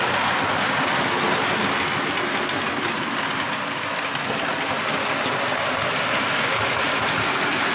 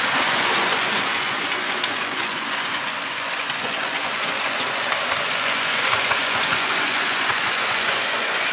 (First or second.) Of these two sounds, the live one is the first